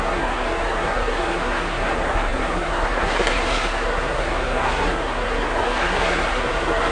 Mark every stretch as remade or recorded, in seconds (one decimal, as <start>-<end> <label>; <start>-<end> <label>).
0.0-6.9 remade